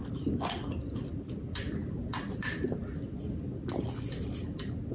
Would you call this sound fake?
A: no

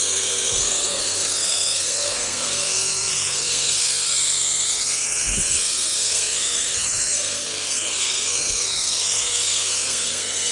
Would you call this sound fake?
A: yes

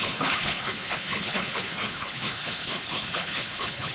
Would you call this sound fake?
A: yes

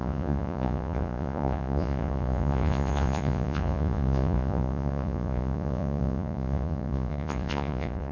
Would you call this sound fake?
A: yes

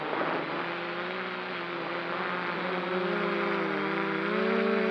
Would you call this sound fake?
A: no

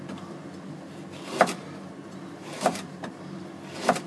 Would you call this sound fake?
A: yes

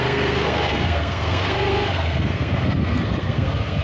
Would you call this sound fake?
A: yes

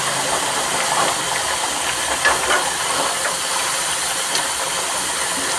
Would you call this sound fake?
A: no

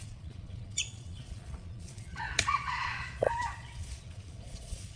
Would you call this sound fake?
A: yes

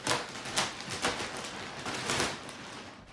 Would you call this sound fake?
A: no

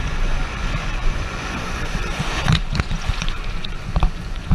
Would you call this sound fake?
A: yes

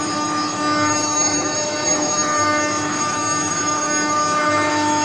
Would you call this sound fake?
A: yes